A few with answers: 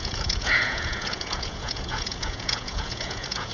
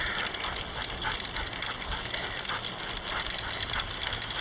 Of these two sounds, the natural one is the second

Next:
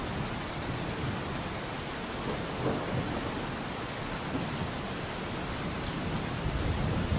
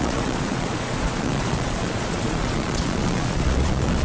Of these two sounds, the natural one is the first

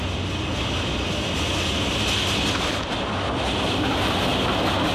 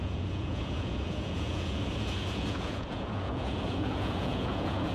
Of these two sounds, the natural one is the first